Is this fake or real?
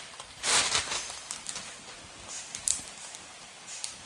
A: fake